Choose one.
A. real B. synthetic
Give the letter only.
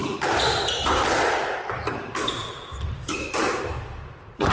A